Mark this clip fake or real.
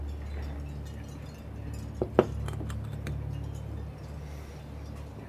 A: fake